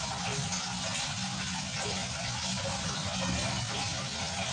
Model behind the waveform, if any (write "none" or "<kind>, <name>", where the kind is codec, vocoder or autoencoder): none